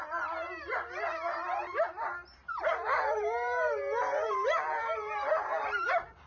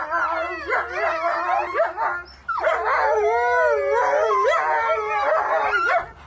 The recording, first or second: second